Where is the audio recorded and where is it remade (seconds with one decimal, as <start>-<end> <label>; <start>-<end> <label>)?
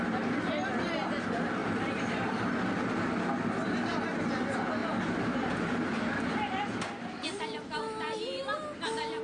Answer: 0.0-1.6 recorded; 1.6-2.5 remade; 2.5-4.8 recorded; 4.8-7.8 remade; 7.8-9.2 recorded